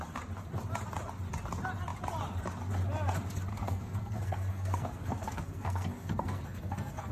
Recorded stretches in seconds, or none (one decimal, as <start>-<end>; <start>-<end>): 0.0-3.5